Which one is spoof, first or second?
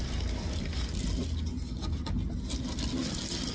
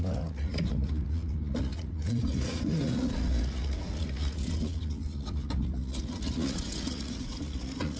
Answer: second